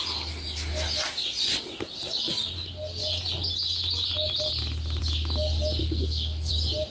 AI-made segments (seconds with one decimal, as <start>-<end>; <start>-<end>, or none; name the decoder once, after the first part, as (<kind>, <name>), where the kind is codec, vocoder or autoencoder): 5.8-6.5 (codec, SNAC)